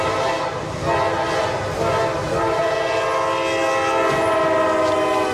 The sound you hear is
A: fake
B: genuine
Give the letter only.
B